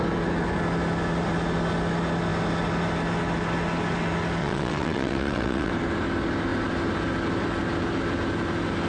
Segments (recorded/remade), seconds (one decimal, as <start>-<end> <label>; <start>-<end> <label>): 0.0-4.4 recorded; 4.4-5.7 remade; 5.7-8.9 recorded